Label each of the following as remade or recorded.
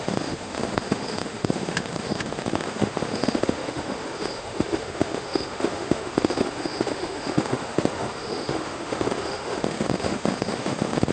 remade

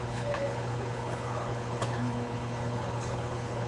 remade